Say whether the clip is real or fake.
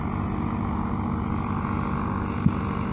real